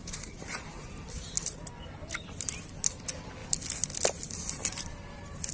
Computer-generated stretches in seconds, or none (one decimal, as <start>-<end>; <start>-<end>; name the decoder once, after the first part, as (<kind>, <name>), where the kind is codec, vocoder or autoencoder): 0.0-0.9 (vocoder, BigVGAN v2)